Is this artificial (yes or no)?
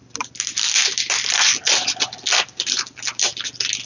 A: no